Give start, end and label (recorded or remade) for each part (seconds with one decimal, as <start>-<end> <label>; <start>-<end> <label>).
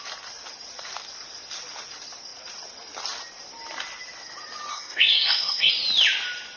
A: 0.0-4.7 recorded; 4.7-5.7 remade; 5.7-6.6 recorded